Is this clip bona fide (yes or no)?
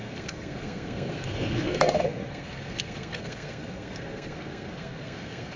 no